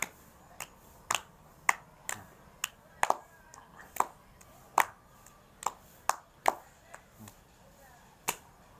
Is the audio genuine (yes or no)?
yes